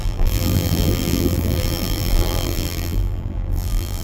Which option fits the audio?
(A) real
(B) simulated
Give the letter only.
B